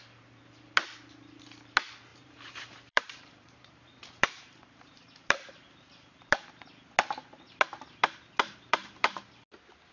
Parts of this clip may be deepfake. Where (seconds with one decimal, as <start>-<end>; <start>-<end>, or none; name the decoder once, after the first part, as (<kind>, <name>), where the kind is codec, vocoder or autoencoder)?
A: 2.1-6.4 (vocoder, BigVGAN v2); 8.5-9.1